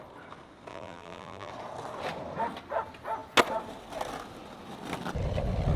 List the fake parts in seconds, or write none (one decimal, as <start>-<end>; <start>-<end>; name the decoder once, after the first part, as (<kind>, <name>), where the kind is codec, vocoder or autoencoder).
0.7-1.5 (vocoder, BigVGAN v2)